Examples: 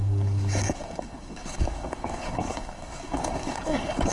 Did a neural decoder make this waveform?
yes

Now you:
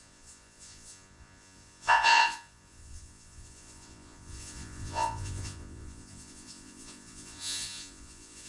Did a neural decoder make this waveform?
yes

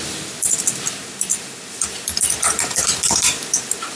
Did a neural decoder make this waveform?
yes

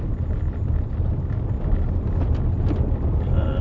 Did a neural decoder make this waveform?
yes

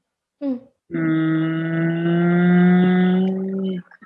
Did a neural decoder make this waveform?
no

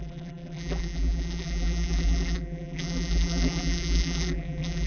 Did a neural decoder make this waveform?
yes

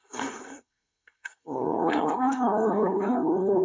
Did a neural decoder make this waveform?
yes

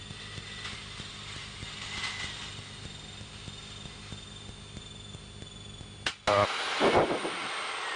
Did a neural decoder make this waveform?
no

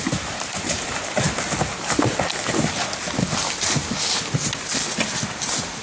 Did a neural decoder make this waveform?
no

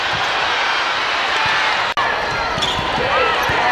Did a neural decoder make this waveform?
no